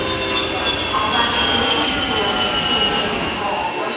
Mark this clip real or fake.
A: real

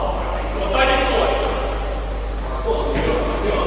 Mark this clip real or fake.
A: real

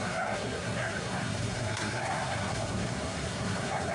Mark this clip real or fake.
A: fake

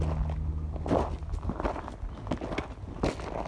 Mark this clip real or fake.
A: real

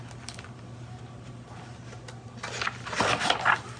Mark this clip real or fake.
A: real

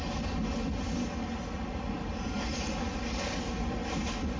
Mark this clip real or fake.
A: real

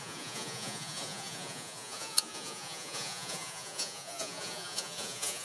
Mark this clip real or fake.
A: fake